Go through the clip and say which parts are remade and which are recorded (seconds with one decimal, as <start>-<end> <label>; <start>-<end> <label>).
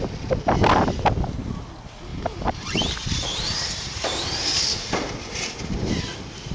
0.0-2.1 recorded; 2.1-6.0 remade; 6.0-6.5 recorded